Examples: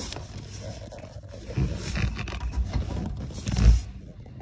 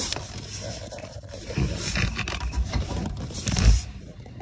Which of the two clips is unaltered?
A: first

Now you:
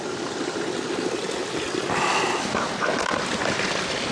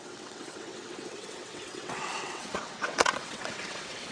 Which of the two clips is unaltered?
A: first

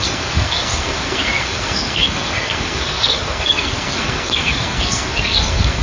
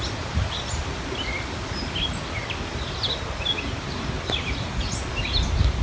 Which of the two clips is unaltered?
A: second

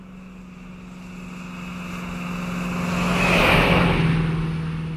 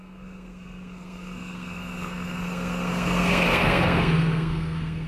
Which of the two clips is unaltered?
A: first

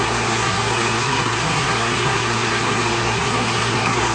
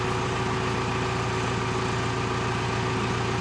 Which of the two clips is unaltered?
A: second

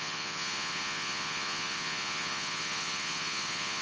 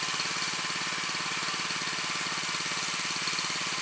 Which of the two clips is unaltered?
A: second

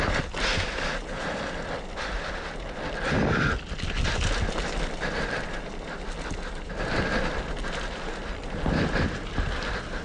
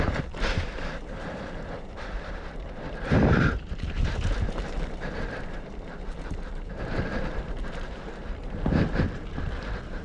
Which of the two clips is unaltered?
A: first